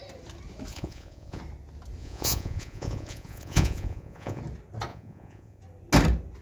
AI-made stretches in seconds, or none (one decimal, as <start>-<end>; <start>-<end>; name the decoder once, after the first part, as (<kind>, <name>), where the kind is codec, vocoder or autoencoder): 0.7-1.4 (vocoder, Vocos); 2.0-4.4; 4.9-5.6